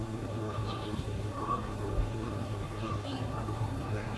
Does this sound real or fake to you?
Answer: fake